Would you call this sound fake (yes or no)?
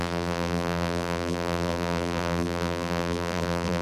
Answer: yes